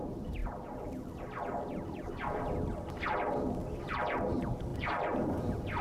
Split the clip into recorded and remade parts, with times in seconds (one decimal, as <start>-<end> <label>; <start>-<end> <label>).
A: 0.0-0.4 remade; 0.4-3.9 recorded; 3.9-5.8 remade